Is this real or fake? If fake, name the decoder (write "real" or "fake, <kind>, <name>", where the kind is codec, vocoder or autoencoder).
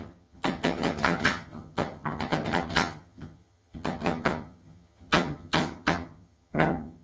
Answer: fake, vocoder, HiFi-GAN